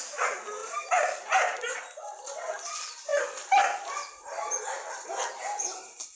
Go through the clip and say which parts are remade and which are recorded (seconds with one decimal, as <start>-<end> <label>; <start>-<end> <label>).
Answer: 0.0-6.2 recorded